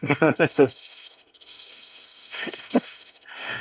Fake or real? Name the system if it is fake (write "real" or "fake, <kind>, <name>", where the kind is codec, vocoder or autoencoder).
fake, codec, SNAC